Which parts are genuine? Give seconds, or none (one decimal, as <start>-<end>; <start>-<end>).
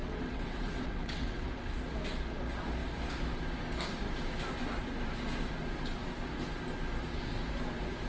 1.7-8.1